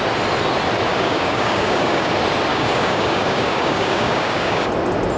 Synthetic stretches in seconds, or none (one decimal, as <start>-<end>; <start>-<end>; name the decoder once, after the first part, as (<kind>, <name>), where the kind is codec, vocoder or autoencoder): 0.9-2.1 (codec, DAC); 2.5-4.7